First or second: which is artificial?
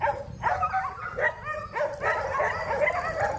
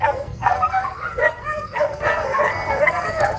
second